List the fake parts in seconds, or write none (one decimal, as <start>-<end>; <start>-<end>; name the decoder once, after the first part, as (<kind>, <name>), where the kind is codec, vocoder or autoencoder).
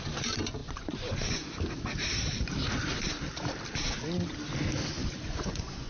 0.6-1.5 (vocoder, Vocos); 5.0-5.9